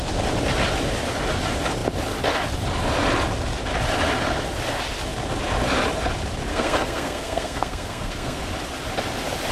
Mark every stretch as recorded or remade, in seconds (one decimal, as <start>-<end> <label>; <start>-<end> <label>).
0.0-6.5 recorded; 6.5-8.4 remade; 8.4-9.5 recorded